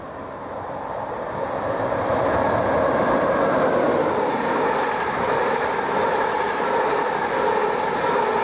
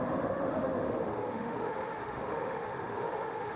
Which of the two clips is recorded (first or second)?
first